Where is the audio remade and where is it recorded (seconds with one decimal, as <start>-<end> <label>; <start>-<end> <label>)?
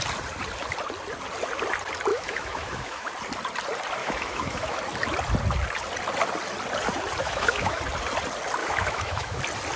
0.0-2.1 recorded; 2.1-3.1 remade; 3.1-4.0 recorded; 4.0-4.8 remade; 4.8-7.2 recorded; 7.2-7.8 remade; 7.8-8.6 recorded; 8.6-9.4 remade; 9.4-9.8 recorded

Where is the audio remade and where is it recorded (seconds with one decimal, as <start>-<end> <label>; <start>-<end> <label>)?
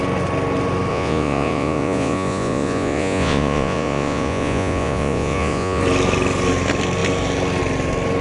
0.0-0.9 recorded; 0.9-5.8 remade; 5.8-8.2 recorded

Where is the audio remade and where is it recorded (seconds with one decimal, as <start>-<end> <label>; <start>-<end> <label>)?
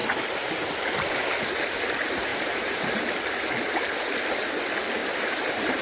0.0-2.3 recorded; 2.3-3.1 remade; 3.1-5.0 recorded; 5.0-5.8 remade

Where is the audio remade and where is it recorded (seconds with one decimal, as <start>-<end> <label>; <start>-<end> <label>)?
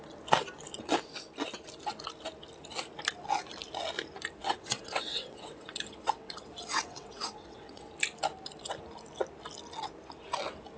0.0-4.4 recorded; 4.4-7.9 remade; 7.9-10.8 recorded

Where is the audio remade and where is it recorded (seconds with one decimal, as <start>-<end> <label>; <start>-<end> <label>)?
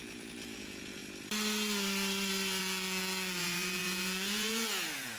0.0-1.0 remade; 1.0-2.6 recorded; 2.6-5.2 remade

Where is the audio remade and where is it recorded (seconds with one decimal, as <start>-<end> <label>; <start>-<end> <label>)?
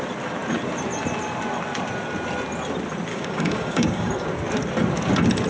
0.0-3.1 recorded; 3.1-4.1 remade; 4.1-5.5 recorded